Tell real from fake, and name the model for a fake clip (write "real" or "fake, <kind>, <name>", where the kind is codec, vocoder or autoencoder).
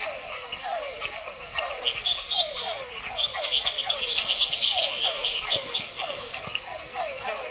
fake, codec, SNAC